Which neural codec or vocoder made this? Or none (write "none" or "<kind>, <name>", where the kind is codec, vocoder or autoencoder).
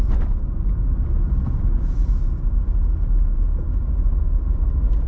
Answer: none